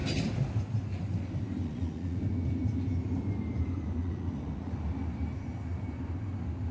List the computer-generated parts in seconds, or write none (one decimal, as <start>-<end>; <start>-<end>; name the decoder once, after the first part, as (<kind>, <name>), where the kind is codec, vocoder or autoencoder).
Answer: 1.6-2.2 (vocoder, Vocos); 4.0-4.8

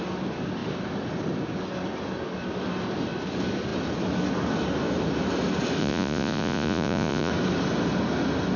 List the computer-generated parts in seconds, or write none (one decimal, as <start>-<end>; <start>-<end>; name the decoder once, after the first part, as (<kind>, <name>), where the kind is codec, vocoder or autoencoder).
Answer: 5.8-7.3 (vocoder, Vocos)

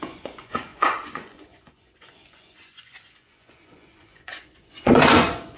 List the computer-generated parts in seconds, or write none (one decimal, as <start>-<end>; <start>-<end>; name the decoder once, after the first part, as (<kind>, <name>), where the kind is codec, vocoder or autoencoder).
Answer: 0.0-5.6 (vocoder, Vocos)

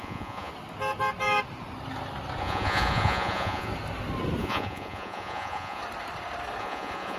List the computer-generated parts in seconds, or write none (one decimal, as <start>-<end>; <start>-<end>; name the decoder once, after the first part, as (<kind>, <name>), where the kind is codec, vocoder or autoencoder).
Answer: 0.0-0.5 (vocoder, Vocos); 2.4-3.7; 4.4-5.8; 6.6-7.2

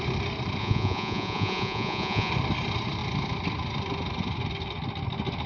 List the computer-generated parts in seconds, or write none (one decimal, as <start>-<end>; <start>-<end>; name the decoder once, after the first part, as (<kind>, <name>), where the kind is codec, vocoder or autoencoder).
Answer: 0.6-2.3 (vocoder, Vocos)

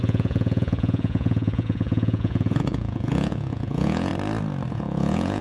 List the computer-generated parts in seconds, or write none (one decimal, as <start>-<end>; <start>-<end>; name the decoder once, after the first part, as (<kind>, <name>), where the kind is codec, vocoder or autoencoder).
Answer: 0.0-4.1 (vocoder, Vocos); 4.7-5.4

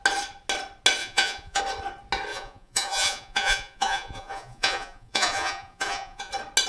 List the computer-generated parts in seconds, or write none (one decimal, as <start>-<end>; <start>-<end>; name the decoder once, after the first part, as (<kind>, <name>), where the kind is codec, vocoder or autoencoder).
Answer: 1.0-1.6 (vocoder, Vocos); 2.3-6.3